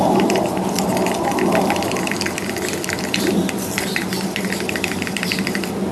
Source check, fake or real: fake